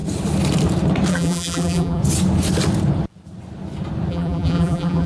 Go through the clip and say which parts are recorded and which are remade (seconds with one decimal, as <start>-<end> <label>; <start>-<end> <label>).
0.0-1.1 recorded; 1.1-2.0 remade; 2.0-4.1 recorded; 4.1-5.1 remade